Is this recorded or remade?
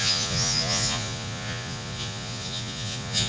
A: remade